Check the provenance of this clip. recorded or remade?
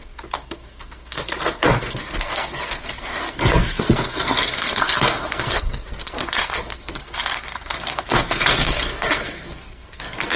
remade